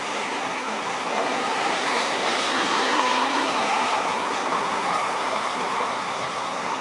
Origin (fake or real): fake